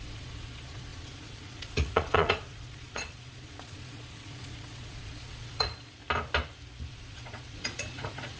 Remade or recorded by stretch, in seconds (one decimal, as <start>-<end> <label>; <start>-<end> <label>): 0.0-6.0 remade; 6.0-6.9 recorded; 6.9-8.4 remade